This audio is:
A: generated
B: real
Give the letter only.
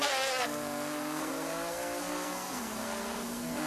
A